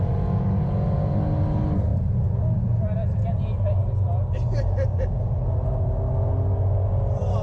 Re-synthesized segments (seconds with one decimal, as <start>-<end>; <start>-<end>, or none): none